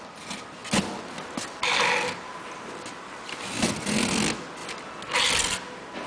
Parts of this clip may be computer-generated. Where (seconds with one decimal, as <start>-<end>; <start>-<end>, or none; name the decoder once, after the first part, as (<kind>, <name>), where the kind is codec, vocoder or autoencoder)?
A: none